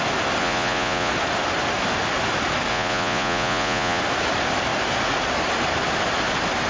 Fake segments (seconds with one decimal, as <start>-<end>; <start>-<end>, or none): 0.4-1.1; 2.7-4.0